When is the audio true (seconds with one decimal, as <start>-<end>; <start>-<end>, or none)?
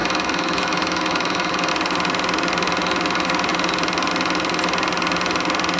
1.7-5.8